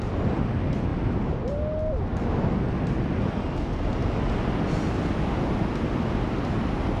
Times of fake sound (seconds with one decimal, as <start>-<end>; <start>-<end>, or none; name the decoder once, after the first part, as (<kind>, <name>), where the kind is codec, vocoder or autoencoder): 0.9-1.5 (vocoder, BigVGAN v2)